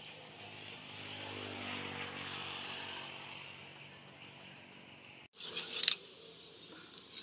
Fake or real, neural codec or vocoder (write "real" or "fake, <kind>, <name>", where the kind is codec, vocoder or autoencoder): real